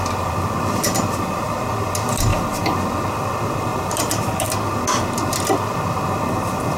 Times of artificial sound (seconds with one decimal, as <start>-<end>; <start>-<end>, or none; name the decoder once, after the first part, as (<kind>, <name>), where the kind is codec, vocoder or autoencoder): 3.7-4.5 (vocoder, BigVGAN v2)